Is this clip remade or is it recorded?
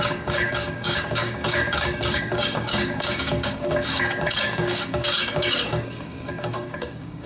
remade